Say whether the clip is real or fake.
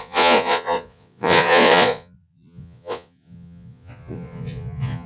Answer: fake